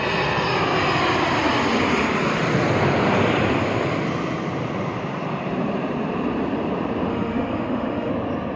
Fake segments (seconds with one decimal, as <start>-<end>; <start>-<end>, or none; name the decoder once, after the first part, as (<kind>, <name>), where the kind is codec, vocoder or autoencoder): 7.1-8.1 (autoencoder, DAC-VAE)